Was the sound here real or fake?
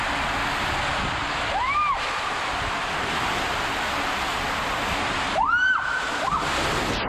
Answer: real